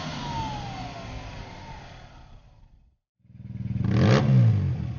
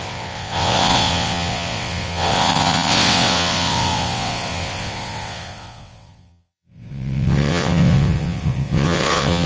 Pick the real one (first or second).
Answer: first